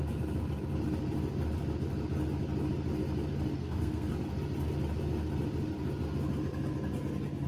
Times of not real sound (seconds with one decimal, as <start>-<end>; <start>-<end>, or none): 3.6-4.1